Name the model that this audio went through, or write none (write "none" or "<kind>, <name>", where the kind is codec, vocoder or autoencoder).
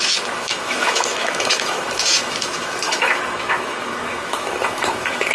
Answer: autoencoder, DAC-VAE